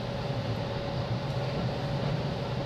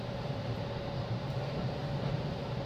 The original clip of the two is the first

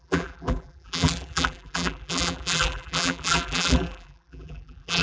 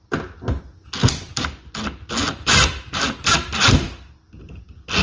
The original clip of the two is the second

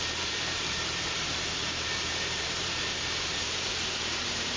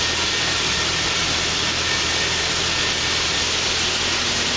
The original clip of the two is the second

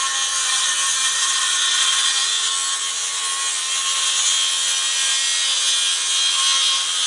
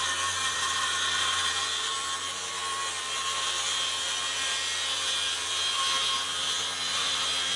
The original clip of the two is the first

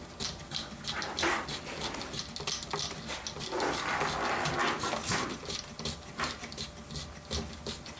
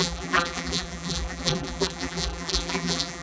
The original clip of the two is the first